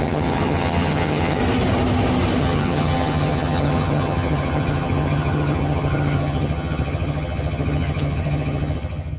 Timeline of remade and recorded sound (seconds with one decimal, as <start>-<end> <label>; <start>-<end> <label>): 0.0-1.4 remade; 1.4-2.4 recorded; 2.4-9.2 remade